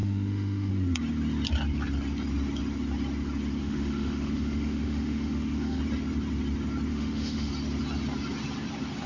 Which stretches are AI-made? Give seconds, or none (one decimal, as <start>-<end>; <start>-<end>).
0.0-0.7; 3.6-5.8; 6.9-7.5

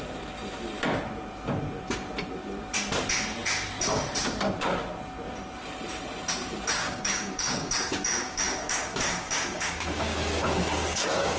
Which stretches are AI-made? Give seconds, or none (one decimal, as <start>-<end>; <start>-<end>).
6.8-11.4

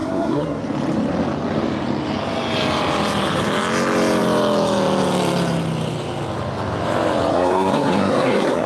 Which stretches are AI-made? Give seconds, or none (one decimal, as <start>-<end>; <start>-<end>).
0.0-0.6; 7.3-8.7

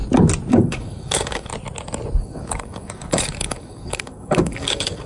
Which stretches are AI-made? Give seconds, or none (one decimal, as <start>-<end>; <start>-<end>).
0.5-1.5; 2.2-5.1

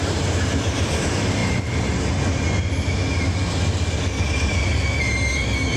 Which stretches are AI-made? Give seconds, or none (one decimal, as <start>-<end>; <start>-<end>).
0.0-1.4; 4.3-5.8

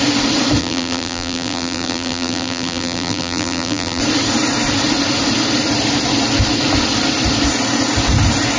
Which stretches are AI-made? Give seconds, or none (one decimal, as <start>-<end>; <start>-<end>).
0.6-4.0